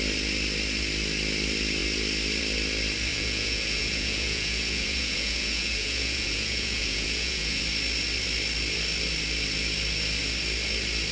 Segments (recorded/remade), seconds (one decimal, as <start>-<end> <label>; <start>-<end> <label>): 0.0-3.1 recorded; 3.1-7.6 remade; 7.6-11.1 recorded